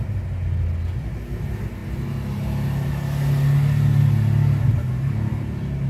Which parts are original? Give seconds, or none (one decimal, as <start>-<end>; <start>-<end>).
0.0-5.9